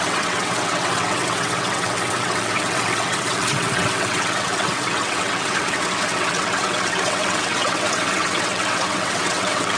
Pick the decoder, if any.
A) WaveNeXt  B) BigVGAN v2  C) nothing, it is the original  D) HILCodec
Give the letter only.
A